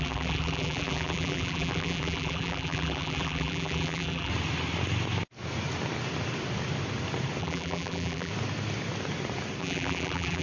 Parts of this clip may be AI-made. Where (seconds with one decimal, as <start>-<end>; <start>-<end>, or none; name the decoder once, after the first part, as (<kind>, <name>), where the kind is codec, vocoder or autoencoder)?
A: 0.0-4.3 (vocoder, BigVGAN v2); 7.4-8.3; 9.6-10.4